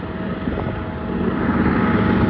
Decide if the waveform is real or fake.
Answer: real